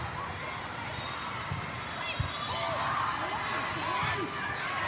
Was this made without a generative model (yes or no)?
yes